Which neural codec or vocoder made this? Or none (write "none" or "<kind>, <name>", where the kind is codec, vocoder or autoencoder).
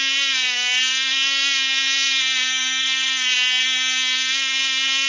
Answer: codec, SNAC